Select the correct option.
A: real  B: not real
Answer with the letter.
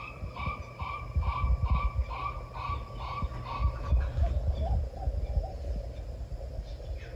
A